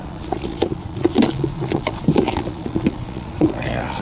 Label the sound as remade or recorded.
remade